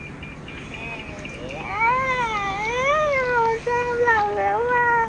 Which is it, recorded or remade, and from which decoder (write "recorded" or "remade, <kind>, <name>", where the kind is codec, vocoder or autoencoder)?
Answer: recorded